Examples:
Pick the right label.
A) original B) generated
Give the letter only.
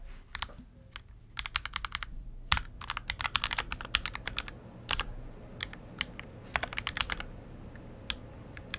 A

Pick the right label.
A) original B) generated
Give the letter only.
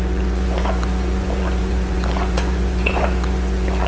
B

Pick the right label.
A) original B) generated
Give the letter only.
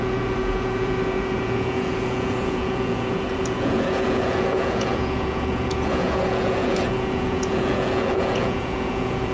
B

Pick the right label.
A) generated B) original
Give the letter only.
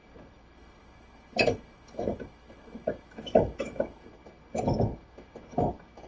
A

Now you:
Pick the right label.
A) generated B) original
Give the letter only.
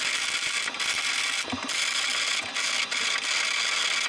B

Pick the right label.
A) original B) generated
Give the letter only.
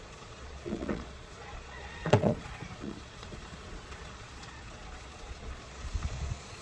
B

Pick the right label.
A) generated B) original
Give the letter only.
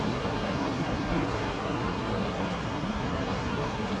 A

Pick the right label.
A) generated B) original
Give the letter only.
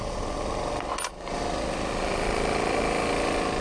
B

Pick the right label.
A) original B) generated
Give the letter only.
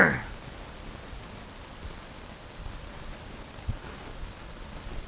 A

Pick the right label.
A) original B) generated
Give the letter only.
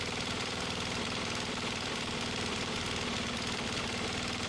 B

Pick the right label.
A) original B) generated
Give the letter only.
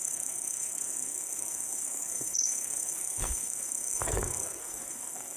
B